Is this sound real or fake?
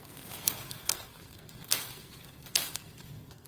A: fake